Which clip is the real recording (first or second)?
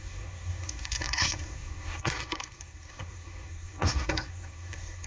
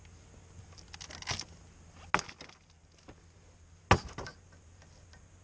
second